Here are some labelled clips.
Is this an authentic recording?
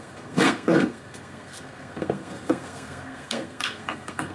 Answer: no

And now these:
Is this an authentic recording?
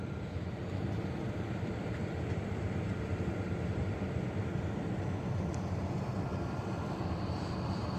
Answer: no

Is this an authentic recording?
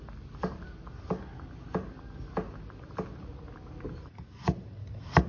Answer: yes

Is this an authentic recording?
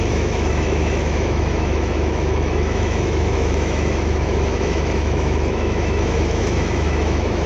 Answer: no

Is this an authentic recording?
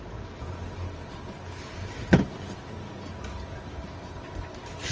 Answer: yes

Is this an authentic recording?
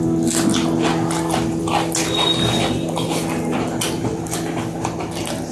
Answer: yes